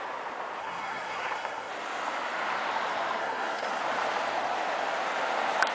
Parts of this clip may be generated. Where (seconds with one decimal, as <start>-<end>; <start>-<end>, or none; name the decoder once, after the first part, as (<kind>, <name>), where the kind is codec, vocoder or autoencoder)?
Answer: 0.6-1.7 (codec, SNAC); 3.2-3.8